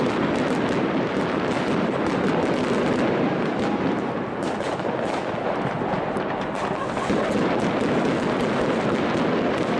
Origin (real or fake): real